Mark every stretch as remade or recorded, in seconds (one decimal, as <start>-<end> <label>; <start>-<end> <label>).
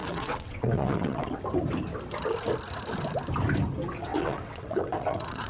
0.0-1.4 remade; 1.4-4.1 recorded; 4.1-5.5 remade